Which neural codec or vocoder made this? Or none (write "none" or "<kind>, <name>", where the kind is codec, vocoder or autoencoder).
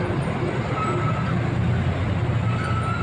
none